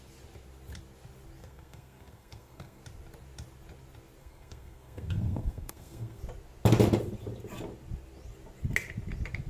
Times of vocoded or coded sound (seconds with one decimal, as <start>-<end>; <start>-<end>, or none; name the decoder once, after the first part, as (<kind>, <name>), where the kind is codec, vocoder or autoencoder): 1.4-2.8 (codec, SNAC); 4.2-6.2